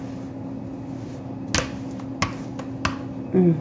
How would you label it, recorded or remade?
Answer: recorded